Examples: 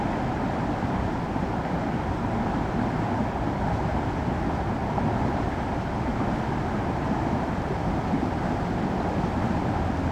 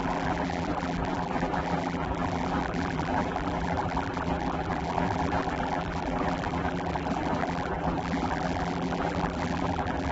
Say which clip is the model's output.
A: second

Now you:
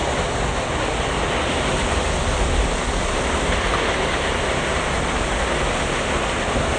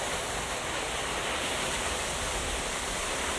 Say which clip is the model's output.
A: second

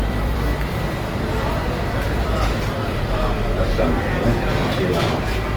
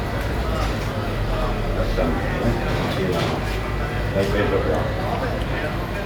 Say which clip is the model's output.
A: first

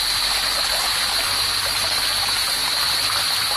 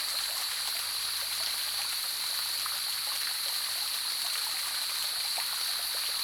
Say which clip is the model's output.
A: second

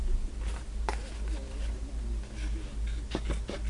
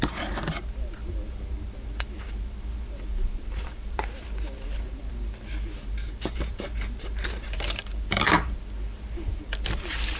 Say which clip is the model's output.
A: second